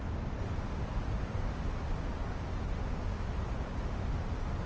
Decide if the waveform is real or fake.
real